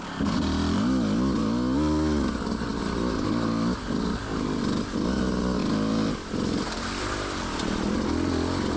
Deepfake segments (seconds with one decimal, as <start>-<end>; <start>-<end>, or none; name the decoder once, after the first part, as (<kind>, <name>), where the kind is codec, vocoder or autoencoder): 5.6-7.9 (vocoder, BigVGAN v2)